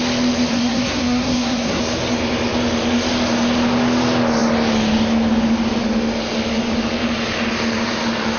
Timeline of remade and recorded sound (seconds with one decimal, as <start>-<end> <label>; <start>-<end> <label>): 0.0-0.5 recorded; 0.5-1.8 remade; 1.8-8.4 recorded